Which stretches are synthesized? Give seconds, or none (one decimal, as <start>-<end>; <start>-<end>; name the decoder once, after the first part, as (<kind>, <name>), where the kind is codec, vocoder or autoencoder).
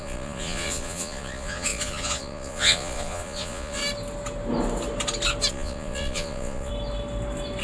0.0-3.8 (vocoder, Vocos); 5.5-6.7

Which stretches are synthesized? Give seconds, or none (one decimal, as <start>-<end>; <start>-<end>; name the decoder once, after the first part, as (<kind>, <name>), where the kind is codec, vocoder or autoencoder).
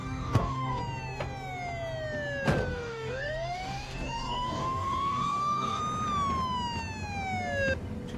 0.0-0.8 (codec, DAC); 2.7-5.8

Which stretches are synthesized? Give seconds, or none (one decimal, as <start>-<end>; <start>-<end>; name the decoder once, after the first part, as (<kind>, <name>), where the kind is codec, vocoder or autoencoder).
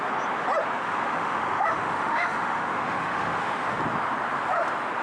0.8-3.8 (autoencoder, DAC-VAE)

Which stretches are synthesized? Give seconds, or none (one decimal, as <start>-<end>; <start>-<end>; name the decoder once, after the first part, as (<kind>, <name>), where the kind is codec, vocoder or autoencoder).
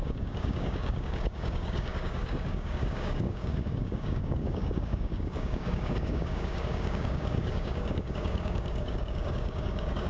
0.0-10.1 (codec, DAC)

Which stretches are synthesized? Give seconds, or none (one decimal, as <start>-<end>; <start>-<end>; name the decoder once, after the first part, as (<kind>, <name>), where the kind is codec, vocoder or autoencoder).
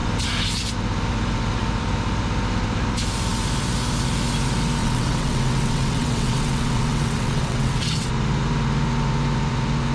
4.8-8.1 (vocoder, WaveNeXt)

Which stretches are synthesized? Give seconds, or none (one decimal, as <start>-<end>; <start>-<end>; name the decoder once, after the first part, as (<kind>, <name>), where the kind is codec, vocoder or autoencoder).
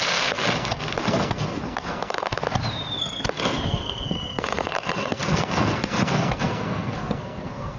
0.0-2.4 (codec, SNAC); 3.0-7.8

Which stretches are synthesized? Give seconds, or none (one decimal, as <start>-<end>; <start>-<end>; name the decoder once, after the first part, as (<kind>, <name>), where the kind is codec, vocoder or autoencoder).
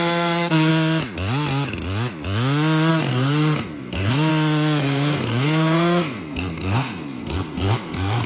0.0-0.7 (codec, SNAC); 2.9-4.3; 4.8-8.3